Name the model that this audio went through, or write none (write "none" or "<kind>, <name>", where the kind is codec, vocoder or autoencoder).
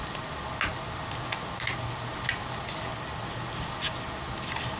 none